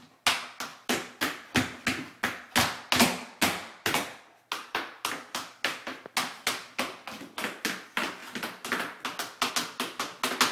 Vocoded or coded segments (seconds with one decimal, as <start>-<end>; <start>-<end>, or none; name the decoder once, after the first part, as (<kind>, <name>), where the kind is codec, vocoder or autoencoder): none